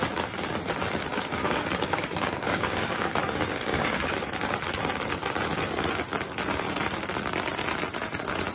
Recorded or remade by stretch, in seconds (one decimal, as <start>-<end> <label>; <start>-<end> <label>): 0.0-1.1 recorded; 1.1-4.3 remade; 4.3-8.5 recorded